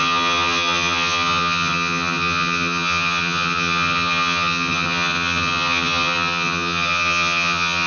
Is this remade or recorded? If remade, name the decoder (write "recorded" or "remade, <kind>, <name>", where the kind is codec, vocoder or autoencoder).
remade, vocoder, HiFi-GAN